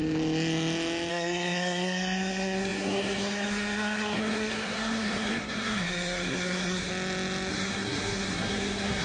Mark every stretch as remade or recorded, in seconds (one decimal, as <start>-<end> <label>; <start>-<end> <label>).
0.0-1.1 recorded; 1.1-6.9 remade; 6.9-7.5 recorded; 7.5-9.0 remade